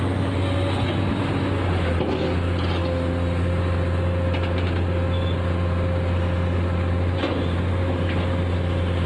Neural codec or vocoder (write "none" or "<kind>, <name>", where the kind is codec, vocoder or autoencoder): none